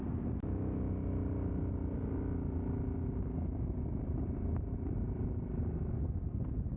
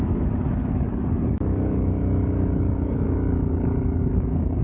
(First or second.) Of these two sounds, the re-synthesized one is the second